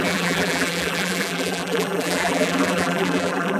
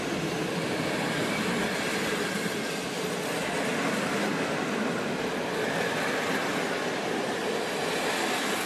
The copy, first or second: first